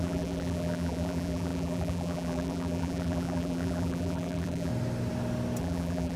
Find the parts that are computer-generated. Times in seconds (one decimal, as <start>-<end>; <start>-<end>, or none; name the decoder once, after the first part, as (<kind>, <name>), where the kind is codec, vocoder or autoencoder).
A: 0.0-4.7 (vocoder, BigVGAN v2); 5.6-6.2